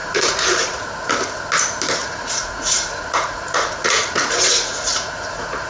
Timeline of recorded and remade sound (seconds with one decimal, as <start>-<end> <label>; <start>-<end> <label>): 0.0-0.8 remade; 0.8-2.0 recorded; 2.0-5.7 remade